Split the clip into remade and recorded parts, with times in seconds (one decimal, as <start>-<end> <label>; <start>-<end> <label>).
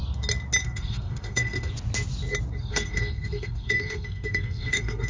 0.0-0.6 recorded; 0.6-1.7 remade; 1.7-2.6 recorded; 2.6-5.1 remade